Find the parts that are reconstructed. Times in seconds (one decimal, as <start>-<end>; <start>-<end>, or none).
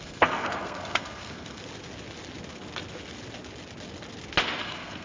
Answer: 0.0-1.6; 4.6-5.0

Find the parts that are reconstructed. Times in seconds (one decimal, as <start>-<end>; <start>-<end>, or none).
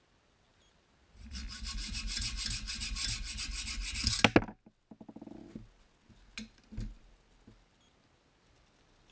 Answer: none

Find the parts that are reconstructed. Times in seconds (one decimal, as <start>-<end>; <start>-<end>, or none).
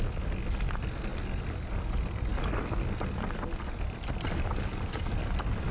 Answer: none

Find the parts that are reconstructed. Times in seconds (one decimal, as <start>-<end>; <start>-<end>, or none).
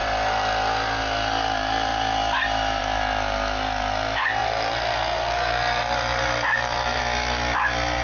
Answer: 4.4-7.0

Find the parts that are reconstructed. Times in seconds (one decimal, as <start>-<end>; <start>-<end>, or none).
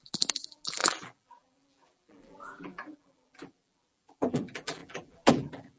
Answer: 0.0-5.8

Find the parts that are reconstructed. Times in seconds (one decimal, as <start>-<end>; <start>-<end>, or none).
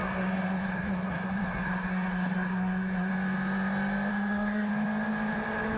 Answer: 0.0-3.1; 4.1-4.7